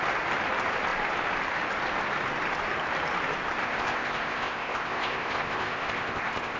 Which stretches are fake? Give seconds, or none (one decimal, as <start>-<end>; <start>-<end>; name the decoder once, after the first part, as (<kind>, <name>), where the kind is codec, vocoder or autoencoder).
3.6-6.6 (codec, ZipCodec)